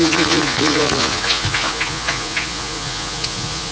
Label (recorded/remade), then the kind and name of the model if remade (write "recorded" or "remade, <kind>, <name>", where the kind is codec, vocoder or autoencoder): remade, vocoder, Vocos